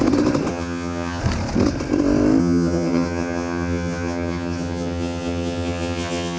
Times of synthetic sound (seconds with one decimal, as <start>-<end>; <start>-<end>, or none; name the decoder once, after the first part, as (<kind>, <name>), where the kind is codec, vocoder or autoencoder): 0.5-1.2 (vocoder, HiFi-GAN); 2.4-6.4